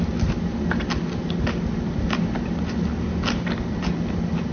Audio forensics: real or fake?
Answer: real